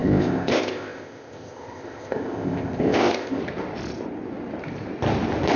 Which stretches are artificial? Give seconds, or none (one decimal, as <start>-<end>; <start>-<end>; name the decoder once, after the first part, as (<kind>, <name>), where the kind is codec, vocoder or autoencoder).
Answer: 0.0-3.4 (codec, ZipCodec)